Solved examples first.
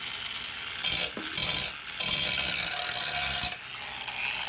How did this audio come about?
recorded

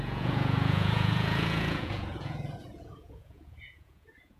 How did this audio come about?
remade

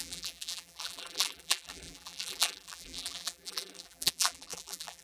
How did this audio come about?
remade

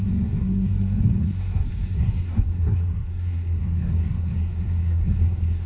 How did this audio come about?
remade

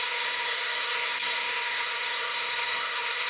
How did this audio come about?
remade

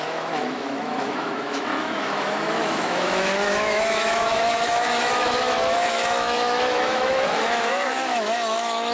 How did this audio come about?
remade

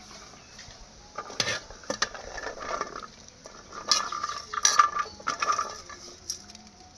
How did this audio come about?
recorded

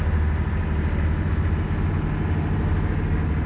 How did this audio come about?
recorded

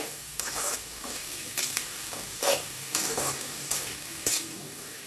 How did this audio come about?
remade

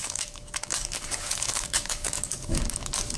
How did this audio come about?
remade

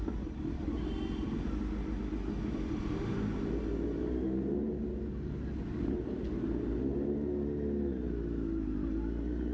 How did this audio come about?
recorded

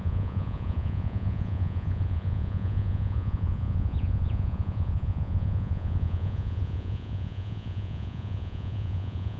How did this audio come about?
remade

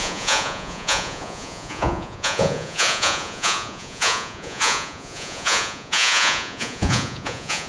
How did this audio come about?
remade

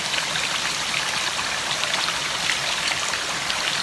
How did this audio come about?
remade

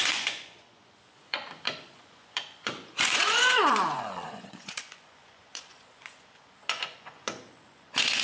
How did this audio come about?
remade